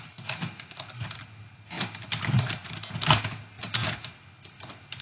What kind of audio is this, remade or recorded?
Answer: recorded